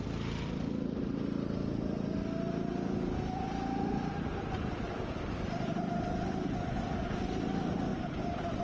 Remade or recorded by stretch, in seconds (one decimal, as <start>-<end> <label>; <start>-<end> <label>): 0.0-7.9 remade; 7.9-8.6 recorded